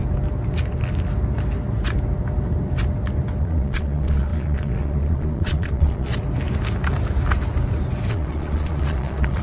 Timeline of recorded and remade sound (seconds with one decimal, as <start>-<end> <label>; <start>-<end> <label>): 0.0-3.4 recorded; 3.4-6.1 remade; 6.1-8.1 recorded; 8.1-9.4 remade